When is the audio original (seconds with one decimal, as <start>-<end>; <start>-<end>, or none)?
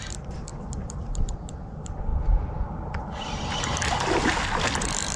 0.0-0.5; 1.6-5.2